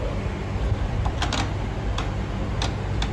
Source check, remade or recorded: recorded